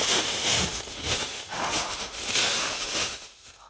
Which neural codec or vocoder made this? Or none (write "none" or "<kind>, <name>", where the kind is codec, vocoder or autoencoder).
autoencoder, DAC-VAE